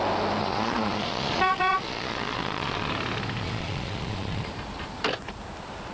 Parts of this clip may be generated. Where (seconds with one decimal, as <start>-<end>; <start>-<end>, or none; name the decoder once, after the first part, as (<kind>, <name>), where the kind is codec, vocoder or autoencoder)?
0.4-2.9 (vocoder, Vocos); 3.4-4.5